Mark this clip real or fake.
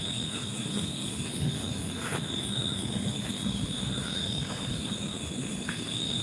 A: fake